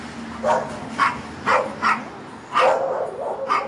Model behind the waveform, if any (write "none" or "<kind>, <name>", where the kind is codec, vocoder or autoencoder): none